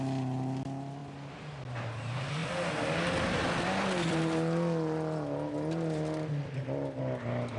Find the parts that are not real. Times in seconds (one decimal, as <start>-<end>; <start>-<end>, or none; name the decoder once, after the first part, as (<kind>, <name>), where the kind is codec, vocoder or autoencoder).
none